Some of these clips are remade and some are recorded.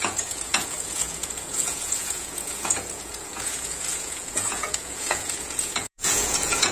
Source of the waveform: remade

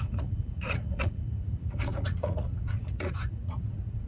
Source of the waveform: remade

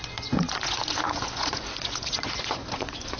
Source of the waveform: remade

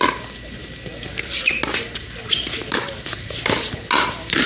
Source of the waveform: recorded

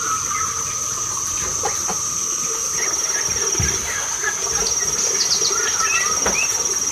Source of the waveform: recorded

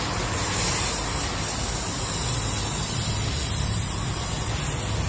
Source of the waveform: recorded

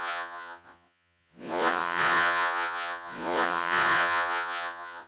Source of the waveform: remade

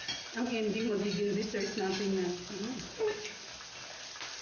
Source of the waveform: recorded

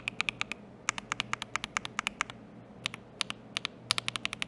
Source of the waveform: recorded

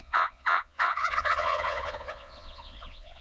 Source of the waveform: remade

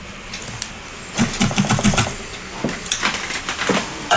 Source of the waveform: recorded